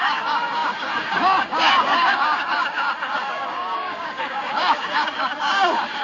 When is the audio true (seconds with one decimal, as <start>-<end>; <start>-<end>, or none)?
none